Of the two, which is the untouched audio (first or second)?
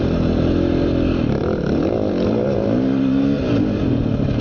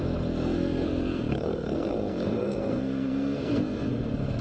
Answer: first